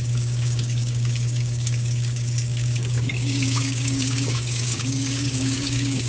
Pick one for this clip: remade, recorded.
remade